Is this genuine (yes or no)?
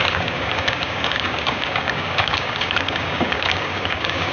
no